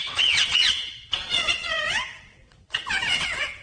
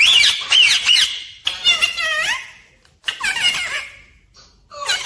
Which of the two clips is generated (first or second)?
first